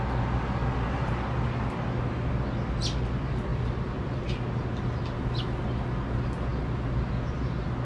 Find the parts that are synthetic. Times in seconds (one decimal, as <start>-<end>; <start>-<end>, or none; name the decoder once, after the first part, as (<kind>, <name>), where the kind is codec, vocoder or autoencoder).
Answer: 3.5-4.2 (vocoder, BigVGAN v2); 6.5-7.1